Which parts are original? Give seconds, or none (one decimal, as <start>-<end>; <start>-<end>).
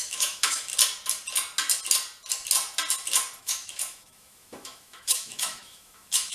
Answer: 0.7-3.4